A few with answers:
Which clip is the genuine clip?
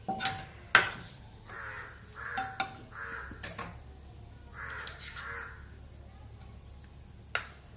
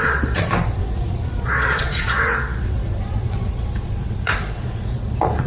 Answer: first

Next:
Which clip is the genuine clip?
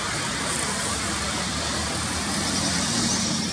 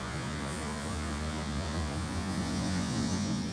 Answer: first